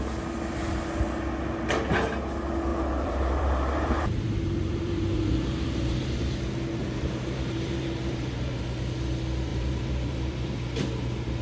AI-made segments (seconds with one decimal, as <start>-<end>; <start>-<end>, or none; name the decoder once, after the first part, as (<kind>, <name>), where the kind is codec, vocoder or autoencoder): 2.7-6.2 (vocoder, BigVGAN v2); 6.8-8.6; 9.5-10.5